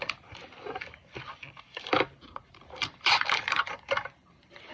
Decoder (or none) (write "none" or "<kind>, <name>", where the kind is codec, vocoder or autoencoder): vocoder, BigVGAN v2